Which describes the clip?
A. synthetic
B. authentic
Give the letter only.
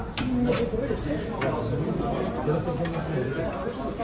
B